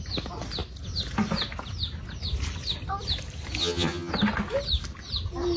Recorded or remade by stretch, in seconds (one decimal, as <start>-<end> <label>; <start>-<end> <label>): 0.0-3.6 recorded; 3.6-4.1 remade; 4.1-5.6 recorded